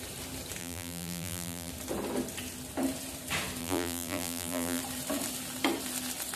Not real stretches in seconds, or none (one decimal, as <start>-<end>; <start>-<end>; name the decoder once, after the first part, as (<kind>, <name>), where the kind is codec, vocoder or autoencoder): 0.6-1.7 (vocoder, BigVGAN v2); 3.6-4.8